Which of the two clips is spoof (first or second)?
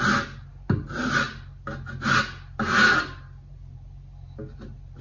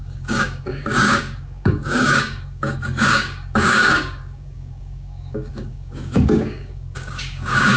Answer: second